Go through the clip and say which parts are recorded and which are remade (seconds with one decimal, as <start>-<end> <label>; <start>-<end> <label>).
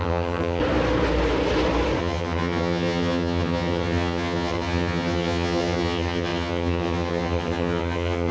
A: 0.0-0.6 remade; 0.6-2.0 recorded; 2.0-8.3 remade